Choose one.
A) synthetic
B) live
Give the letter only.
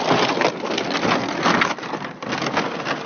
B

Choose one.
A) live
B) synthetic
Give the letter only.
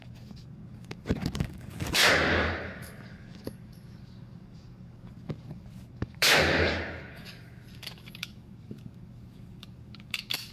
B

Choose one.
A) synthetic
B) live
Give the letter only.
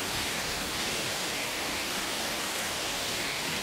A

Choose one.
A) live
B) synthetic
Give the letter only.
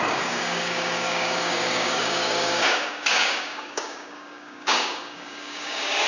B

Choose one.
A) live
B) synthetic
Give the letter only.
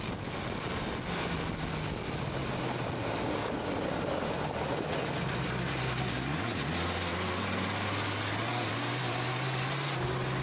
A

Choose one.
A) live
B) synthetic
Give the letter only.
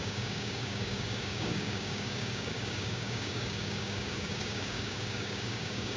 B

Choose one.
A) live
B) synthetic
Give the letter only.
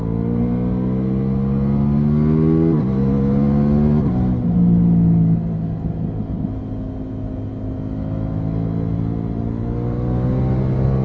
A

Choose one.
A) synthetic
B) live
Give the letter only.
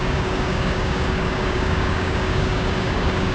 A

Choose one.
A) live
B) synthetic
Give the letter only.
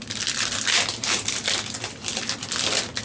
A